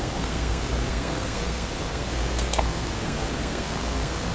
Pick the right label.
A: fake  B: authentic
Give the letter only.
A